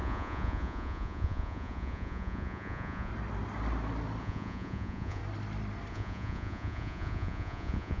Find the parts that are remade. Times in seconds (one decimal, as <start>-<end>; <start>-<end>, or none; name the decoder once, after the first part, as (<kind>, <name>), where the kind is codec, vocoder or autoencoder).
0.0-3.1 (vocoder, Vocos); 4.2-5.2; 5.9-8.0

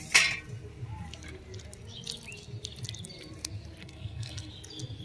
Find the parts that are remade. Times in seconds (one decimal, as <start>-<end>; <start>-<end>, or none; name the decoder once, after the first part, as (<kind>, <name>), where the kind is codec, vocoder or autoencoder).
3.8-4.5 (codec, SNAC)

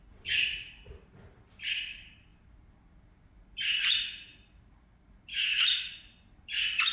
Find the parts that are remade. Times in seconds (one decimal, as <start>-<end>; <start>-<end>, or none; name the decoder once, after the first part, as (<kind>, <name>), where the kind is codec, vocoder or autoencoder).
5.3-5.9 (autoencoder, DAC-VAE)

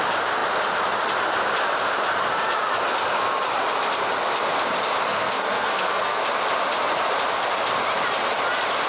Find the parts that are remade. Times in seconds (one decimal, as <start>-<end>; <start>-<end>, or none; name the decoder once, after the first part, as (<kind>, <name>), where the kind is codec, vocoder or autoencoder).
5.1-6.2 (codec, SNAC)

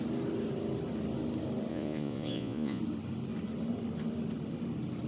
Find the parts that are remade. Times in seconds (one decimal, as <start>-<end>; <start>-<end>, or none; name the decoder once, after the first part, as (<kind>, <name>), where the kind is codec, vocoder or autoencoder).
1.7-2.8 (vocoder, Vocos)

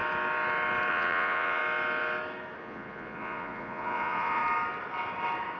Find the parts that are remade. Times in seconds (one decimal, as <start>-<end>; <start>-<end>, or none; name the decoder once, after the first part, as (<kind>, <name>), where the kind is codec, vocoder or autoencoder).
0.9-1.6 (vocoder, Vocos); 2.6-4.4

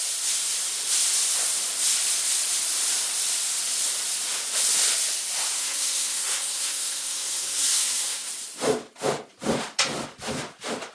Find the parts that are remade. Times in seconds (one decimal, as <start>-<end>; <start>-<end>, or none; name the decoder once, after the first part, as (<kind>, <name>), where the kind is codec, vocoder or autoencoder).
5.6-8.3 (codec, SNAC)